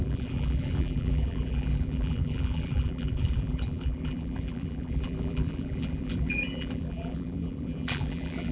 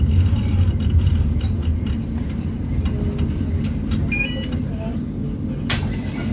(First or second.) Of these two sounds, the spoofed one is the first